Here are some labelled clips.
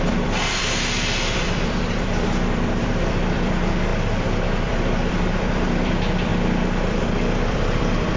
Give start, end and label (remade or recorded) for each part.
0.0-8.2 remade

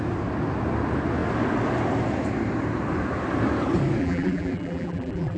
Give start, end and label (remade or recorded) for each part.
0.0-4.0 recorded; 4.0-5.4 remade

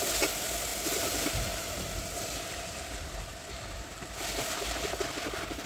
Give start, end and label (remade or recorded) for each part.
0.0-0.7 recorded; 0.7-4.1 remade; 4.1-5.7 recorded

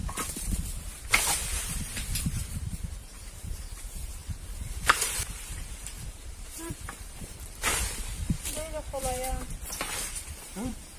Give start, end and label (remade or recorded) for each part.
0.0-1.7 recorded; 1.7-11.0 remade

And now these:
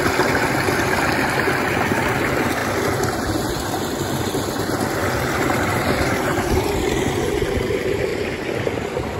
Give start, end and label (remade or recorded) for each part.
0.0-5.0 recorded; 5.0-6.1 remade; 6.1-8.1 recorded; 8.1-9.2 remade

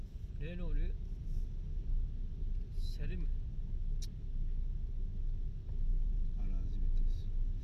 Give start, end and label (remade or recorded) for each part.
0.0-5.9 recorded; 5.9-6.4 remade; 6.4-7.6 recorded